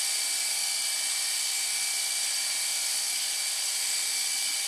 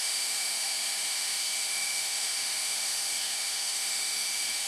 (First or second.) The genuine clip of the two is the first